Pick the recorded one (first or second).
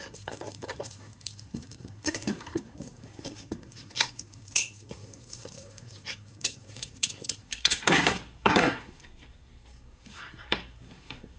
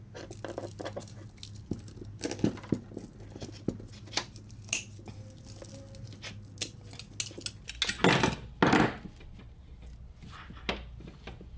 second